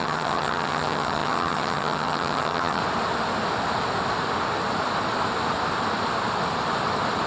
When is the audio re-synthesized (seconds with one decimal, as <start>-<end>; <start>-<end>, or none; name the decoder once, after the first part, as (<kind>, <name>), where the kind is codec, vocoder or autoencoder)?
0.0-2.8 (vocoder, HiFi-GAN)